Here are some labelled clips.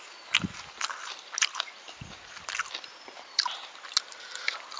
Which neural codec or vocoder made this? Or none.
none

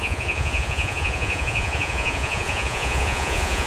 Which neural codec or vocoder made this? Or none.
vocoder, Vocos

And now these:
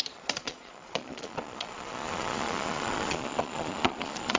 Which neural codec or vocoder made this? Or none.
vocoder, Vocos